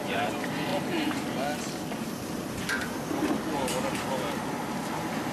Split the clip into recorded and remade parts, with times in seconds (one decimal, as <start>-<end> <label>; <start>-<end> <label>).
0.0-5.3 recorded